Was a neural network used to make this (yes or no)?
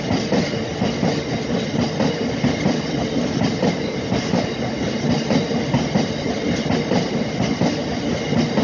no